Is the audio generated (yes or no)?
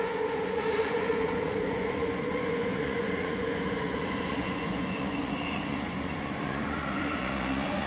yes